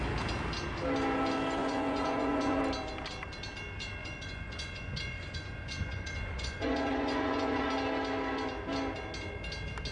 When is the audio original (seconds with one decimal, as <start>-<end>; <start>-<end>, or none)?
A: 0.0-1.6; 2.6-4.0; 7.7-9.9